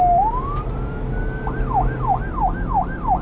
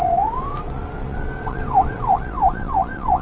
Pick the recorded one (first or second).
first